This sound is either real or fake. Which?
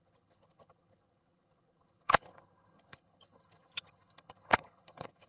fake